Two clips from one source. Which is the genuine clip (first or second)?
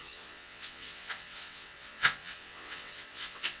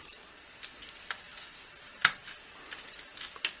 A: second